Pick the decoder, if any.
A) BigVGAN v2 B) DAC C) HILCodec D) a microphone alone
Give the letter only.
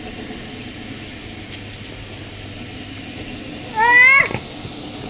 D